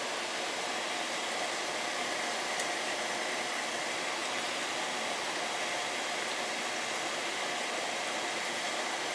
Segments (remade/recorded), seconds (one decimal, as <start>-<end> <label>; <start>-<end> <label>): 0.0-9.1 recorded